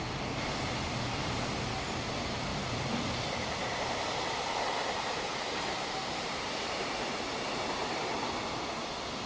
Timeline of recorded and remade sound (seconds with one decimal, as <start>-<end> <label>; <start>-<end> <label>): 0.0-2.5 recorded; 2.5-7.4 remade; 7.4-9.3 recorded